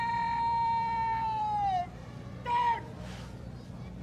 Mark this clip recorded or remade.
remade